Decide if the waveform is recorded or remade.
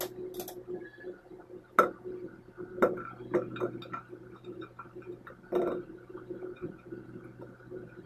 recorded